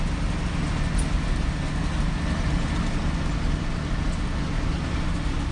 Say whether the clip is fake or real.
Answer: real